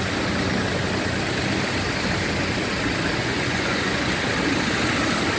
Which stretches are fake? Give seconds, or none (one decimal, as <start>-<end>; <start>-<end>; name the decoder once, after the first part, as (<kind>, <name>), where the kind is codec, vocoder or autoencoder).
3.2-4.1 (vocoder, Vocos)